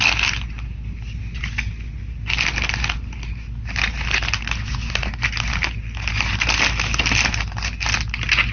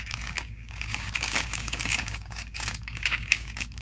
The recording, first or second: first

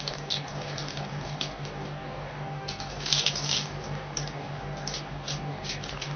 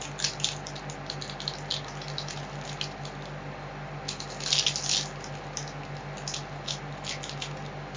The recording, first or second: second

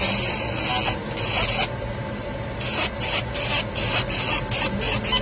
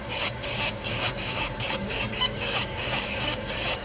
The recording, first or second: first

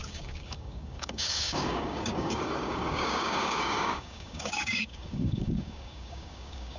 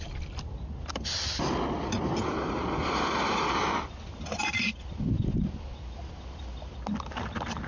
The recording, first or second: second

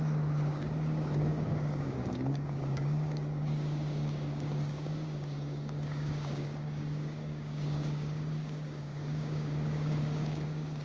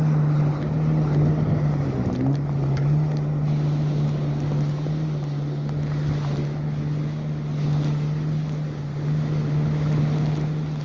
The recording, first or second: second